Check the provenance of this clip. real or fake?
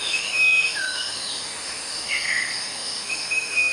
fake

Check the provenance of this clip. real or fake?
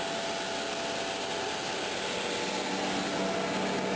real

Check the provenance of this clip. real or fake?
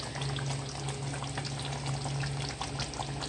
real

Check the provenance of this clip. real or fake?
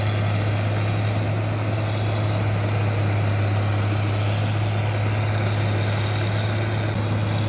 real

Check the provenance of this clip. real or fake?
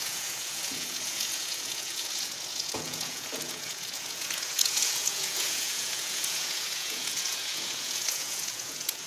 fake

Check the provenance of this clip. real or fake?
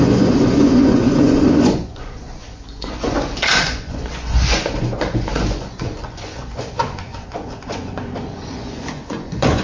fake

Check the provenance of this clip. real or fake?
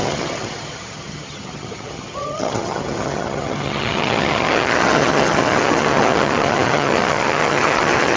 fake